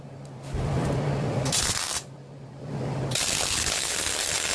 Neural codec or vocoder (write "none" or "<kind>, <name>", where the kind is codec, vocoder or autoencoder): vocoder, BigVGAN v2